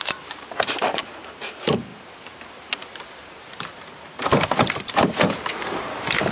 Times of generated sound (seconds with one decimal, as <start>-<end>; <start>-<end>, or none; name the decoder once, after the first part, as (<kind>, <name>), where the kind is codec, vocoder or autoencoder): 0.0-6.3 (vocoder, BigVGAN v2)